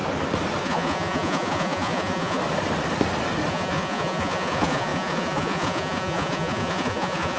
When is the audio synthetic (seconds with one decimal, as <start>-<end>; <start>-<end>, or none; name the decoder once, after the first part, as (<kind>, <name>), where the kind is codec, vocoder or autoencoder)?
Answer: 0.6-2.4 (vocoder, Vocos); 3.5-7.4